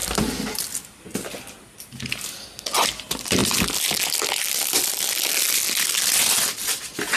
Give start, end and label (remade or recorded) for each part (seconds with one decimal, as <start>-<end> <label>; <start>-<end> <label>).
0.0-0.7 remade; 0.7-7.2 recorded